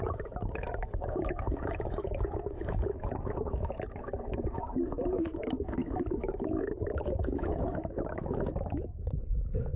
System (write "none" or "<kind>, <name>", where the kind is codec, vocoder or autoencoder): autoencoder, DAC-VAE